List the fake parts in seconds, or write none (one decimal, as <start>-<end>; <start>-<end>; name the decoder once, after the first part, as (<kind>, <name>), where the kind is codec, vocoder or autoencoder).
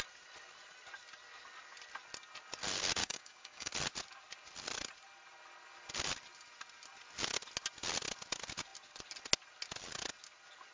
3.0-3.7 (codec, DAC)